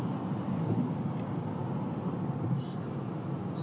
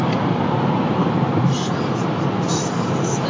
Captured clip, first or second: first